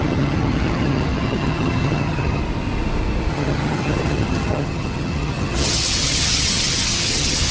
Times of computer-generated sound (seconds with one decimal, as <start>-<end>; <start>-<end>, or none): 0.0-2.4; 3.3-7.5